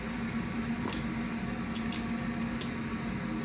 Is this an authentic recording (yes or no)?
yes